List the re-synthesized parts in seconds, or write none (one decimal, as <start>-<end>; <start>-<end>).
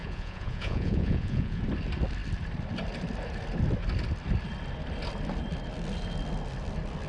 0.0-1.6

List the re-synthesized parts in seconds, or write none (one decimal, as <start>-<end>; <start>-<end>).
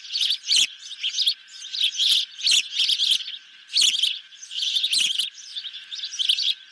none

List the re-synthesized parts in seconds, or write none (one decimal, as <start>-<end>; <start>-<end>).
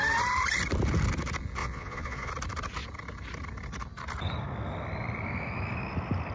1.6-2.3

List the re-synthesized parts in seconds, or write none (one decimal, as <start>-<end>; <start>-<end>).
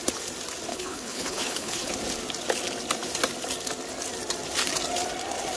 0.7-1.9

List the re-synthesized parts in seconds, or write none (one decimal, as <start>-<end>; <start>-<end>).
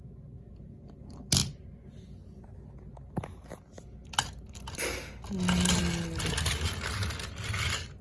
none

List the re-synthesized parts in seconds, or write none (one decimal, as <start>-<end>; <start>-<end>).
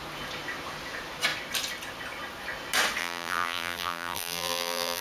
3.0-5.0